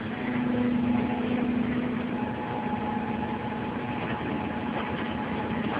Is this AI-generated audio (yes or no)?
no